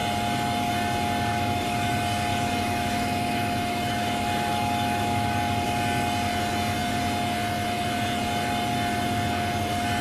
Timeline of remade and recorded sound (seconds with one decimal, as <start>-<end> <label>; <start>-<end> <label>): 0.0-1.3 recorded; 1.3-1.9 remade; 1.9-2.3 recorded; 2.3-5.4 remade; 5.4-10.0 recorded